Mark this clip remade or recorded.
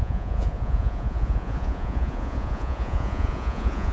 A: remade